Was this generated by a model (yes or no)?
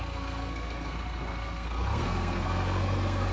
yes